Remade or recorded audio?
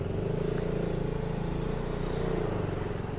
recorded